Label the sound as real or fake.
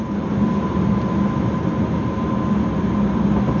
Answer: real